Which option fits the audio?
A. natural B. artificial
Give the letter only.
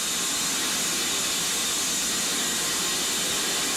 A